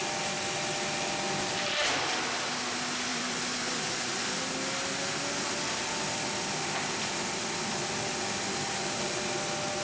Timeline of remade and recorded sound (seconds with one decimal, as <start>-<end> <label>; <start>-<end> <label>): 0.0-3.1 recorded; 3.1-4.4 remade; 4.4-9.8 recorded

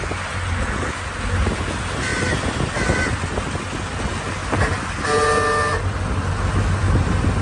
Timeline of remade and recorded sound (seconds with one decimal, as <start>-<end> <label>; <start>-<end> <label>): 0.0-7.4 recorded